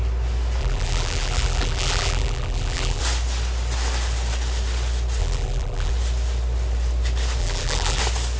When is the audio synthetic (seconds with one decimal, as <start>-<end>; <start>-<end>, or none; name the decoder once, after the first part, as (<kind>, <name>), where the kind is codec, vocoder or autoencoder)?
0.6-3.0 (vocoder, BigVGAN v2); 5.2-5.9; 7.4-8.0